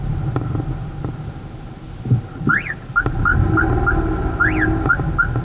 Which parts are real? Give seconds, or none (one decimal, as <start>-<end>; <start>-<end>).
0.0-5.4